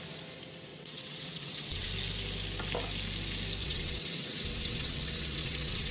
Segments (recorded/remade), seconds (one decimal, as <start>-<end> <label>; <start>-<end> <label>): 0.0-0.7 recorded; 0.7-1.9 remade; 1.9-3.6 recorded; 3.6-5.9 remade